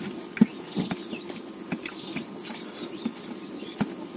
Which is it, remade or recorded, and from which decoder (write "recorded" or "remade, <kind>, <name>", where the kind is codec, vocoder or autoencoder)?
recorded